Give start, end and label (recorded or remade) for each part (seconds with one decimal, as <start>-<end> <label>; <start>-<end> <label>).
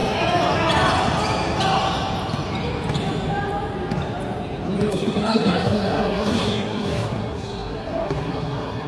0.0-4.9 recorded; 4.9-8.9 remade